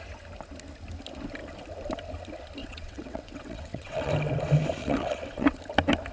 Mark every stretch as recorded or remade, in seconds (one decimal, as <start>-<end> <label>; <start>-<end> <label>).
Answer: 0.0-2.6 recorded; 2.6-4.1 remade; 4.1-4.8 recorded; 4.8-5.6 remade; 5.6-6.1 recorded